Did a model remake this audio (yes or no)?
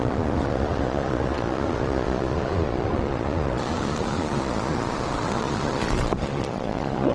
yes